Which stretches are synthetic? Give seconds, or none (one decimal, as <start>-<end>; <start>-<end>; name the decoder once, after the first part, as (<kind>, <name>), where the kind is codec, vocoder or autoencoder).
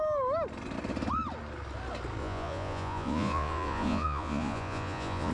2.2-5.3 (vocoder, Vocos)